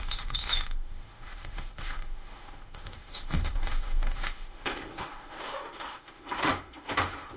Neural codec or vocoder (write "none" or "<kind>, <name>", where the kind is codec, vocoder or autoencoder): autoencoder, DAC-VAE